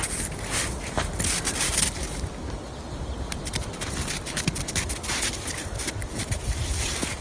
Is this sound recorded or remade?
recorded